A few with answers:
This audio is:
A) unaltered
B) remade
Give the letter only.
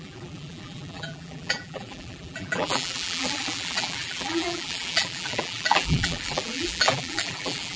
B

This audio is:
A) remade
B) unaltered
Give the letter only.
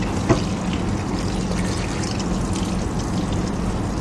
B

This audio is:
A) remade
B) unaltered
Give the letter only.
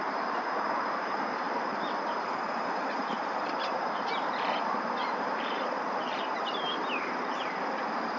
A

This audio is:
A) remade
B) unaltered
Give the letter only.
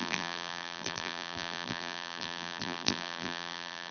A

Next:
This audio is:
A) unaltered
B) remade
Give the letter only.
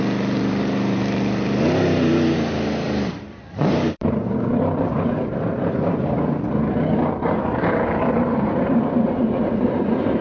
B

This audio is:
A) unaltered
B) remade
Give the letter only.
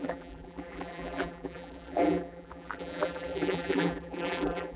B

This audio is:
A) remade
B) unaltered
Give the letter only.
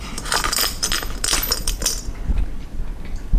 A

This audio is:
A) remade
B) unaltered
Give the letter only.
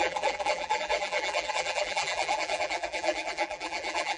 A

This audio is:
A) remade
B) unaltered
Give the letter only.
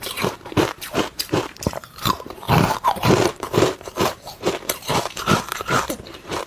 A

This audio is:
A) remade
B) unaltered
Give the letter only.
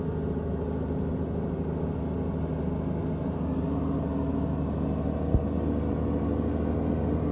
B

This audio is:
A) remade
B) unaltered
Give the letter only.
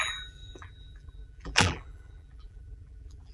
A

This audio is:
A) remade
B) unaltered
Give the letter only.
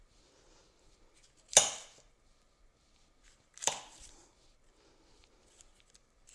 B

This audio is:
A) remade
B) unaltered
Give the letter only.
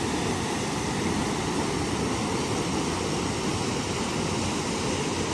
B